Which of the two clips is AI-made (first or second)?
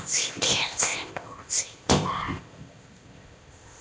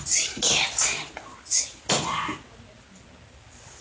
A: first